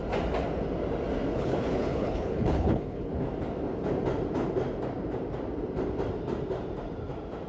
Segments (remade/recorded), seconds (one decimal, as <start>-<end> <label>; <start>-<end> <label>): 0.0-1.3 recorded; 1.3-3.1 remade; 3.1-7.5 recorded